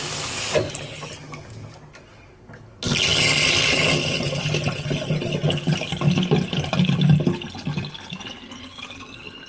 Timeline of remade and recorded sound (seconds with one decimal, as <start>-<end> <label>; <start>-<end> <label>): 0.0-9.5 recorded